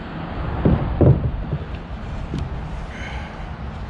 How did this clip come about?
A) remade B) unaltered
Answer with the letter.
B